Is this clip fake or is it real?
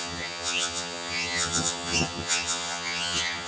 fake